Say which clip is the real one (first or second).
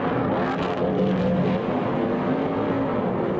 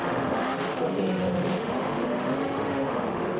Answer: first